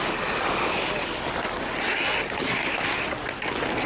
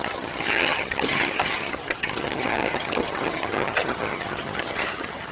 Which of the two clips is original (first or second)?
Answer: first